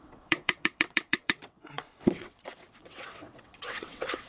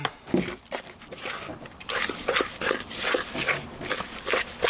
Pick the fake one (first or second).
first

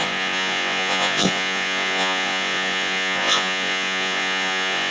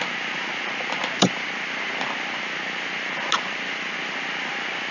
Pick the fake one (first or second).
first